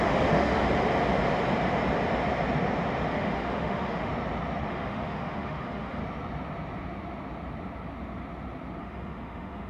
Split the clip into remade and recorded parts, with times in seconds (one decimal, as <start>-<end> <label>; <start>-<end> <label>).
0.0-0.6 remade; 0.6-3.1 recorded; 3.1-4.1 remade; 4.1-4.7 recorded; 4.7-6.0 remade; 6.0-8.8 recorded; 8.8-9.7 remade